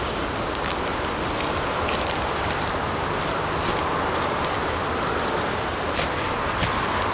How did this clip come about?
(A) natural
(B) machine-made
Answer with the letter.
A